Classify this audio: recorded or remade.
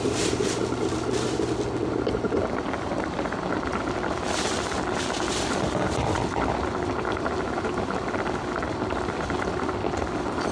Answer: recorded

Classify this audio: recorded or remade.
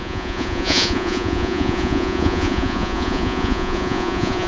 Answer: remade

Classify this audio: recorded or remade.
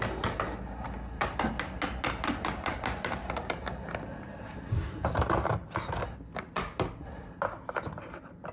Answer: recorded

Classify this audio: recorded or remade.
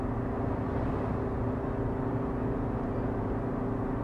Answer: recorded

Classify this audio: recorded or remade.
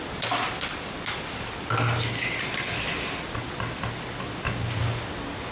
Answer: recorded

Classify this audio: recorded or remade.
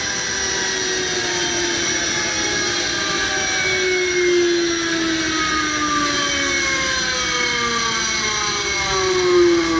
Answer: recorded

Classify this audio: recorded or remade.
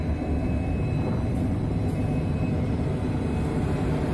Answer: recorded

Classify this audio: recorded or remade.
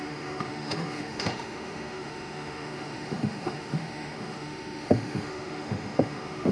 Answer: remade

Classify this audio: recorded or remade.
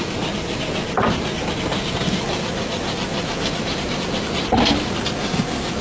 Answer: recorded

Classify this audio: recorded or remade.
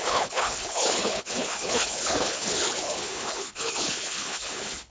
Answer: remade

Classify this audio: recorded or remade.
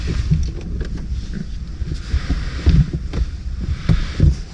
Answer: recorded